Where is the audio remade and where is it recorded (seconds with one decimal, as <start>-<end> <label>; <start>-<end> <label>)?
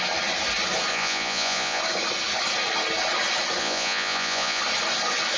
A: 0.0-0.9 recorded; 0.9-1.8 remade; 1.8-3.6 recorded; 3.6-4.6 remade; 4.6-5.4 recorded